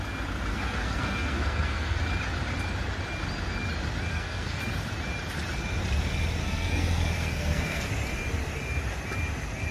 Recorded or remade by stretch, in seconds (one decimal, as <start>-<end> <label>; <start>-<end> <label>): 0.0-0.5 recorded; 0.5-2.0 remade; 2.0-4.1 recorded; 4.1-4.6 remade; 4.6-6.4 recorded; 6.4-7.9 remade; 7.9-9.7 recorded